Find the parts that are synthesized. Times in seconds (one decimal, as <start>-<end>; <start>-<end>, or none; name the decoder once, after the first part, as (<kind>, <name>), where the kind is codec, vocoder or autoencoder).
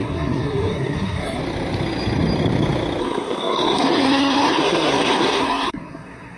0.0-1.4 (codec, SNAC); 3.0-6.4